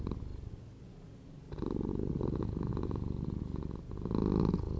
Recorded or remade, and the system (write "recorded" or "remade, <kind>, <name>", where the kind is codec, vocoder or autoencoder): recorded